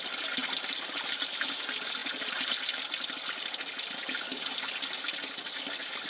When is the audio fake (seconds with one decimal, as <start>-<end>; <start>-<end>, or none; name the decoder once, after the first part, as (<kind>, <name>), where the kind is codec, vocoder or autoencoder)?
none